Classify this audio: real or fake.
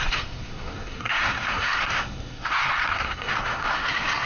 fake